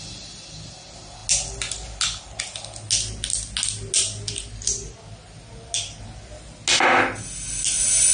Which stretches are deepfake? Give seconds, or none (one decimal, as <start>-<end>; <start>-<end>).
none

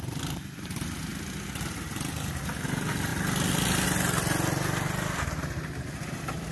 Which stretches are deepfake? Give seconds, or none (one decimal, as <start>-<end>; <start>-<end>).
none